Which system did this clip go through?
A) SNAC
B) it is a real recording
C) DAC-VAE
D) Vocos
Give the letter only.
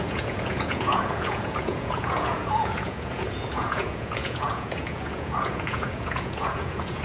D